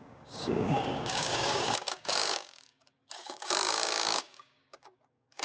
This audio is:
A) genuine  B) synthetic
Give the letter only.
B